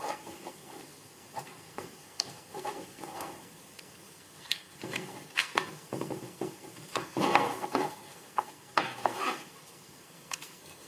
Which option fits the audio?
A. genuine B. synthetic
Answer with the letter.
B